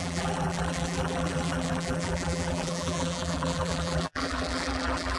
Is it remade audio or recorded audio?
remade